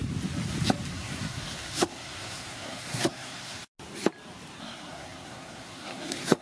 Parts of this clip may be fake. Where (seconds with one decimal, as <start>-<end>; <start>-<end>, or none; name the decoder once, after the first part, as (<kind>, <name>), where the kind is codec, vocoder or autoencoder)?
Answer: 0.9-3.6 (codec, SNAC); 4.6-6.4